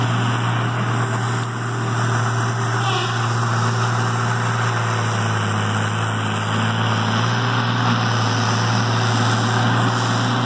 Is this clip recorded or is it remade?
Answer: recorded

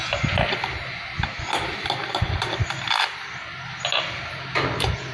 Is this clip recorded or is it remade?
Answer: recorded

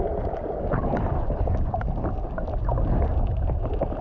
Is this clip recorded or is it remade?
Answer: recorded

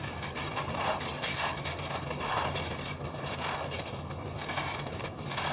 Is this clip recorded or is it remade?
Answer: recorded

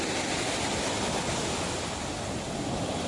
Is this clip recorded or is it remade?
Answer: recorded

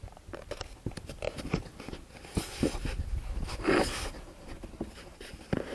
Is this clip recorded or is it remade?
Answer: recorded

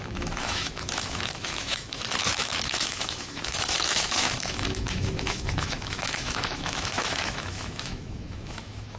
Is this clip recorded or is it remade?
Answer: remade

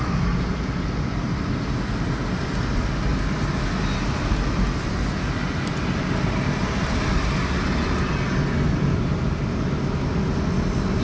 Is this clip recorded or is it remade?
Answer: recorded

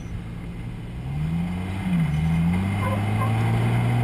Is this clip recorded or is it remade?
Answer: recorded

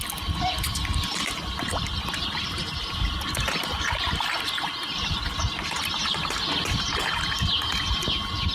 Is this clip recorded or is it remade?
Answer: recorded